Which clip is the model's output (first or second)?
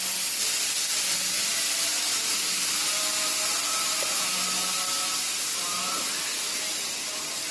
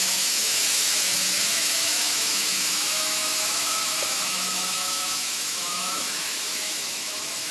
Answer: second